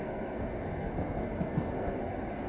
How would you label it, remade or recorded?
remade